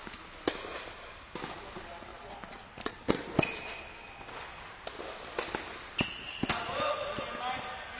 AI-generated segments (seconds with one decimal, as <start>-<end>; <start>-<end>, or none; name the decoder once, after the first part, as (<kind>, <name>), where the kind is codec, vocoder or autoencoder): 2.1-3.1 (vocoder, Vocos)